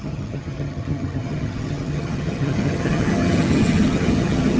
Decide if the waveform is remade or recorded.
remade